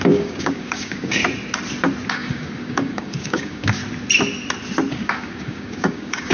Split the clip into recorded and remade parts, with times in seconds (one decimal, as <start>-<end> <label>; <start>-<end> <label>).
0.0-1.2 remade; 1.2-2.1 recorded; 2.1-3.8 remade; 3.8-4.9 recorded; 4.9-6.3 remade